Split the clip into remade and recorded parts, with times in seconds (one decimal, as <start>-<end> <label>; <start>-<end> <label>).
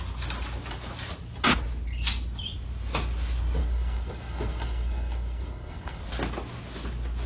0.0-3.6 recorded; 3.6-6.0 remade; 6.0-7.3 recorded